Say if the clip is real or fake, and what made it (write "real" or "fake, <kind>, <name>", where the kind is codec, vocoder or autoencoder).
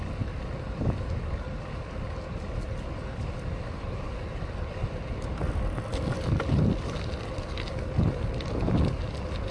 real